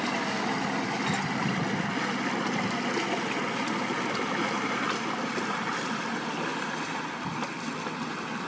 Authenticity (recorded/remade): recorded